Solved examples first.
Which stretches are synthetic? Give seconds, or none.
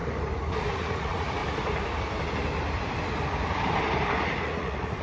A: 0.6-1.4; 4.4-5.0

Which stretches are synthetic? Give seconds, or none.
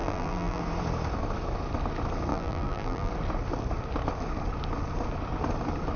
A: 0.0-0.6; 2.3-3.1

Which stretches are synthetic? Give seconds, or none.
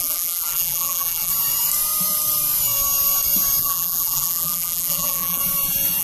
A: 0.0-1.3; 3.6-5.4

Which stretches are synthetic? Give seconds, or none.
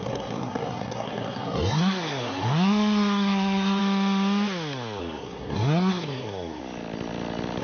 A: 0.0-3.8; 5.0-6.6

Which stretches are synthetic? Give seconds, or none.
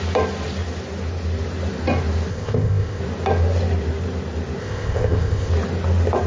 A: 2.3-3.0; 4.6-5.5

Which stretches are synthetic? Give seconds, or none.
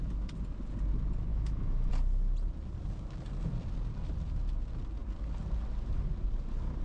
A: 1.3-1.9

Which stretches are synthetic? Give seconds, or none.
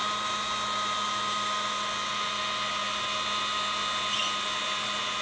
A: none